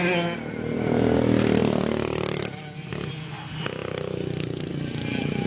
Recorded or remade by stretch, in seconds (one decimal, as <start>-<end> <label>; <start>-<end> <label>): 0.0-1.6 recorded; 1.6-2.4 remade; 2.4-3.8 recorded; 3.8-4.7 remade; 4.7-5.5 recorded